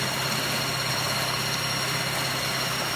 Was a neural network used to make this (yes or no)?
no